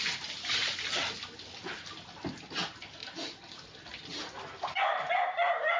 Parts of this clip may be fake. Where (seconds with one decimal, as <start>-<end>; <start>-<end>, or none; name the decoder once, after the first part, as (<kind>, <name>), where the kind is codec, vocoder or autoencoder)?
none

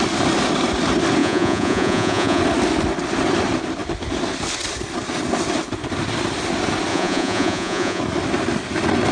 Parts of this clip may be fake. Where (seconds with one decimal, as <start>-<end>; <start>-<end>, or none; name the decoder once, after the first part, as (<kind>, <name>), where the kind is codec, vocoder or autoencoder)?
1.2-2.4 (vocoder, Vocos); 6.9-8.0